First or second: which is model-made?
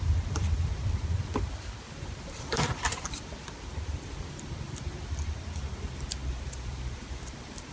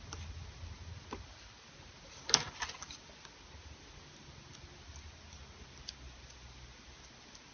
first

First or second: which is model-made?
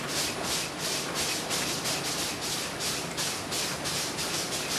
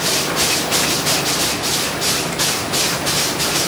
first